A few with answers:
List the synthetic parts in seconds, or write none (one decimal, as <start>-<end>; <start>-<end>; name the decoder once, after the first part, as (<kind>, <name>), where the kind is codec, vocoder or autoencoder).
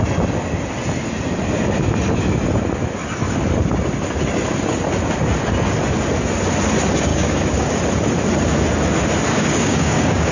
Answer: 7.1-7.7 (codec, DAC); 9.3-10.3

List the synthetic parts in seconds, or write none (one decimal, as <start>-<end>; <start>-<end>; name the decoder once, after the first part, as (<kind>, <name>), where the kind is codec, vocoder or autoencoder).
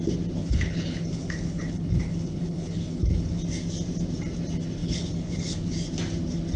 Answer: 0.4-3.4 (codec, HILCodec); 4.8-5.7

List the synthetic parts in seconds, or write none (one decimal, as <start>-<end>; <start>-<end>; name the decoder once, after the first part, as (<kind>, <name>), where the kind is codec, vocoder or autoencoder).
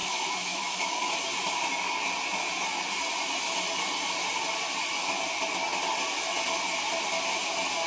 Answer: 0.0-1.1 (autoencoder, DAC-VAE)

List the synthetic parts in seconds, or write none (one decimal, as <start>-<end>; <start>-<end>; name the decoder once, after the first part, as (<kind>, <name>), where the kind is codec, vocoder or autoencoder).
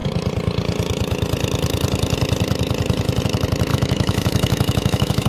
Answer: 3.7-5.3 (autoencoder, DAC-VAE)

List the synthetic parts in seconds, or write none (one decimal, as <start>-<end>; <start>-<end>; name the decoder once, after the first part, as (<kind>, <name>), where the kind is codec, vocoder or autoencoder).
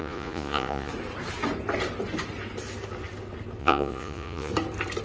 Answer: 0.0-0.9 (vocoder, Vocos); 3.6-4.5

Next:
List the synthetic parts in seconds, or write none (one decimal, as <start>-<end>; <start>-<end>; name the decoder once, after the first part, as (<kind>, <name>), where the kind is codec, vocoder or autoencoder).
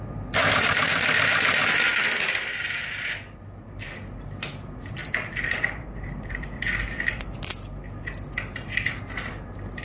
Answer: 1.9-3.9 (vocoder, BigVGAN v2); 5.0-8.0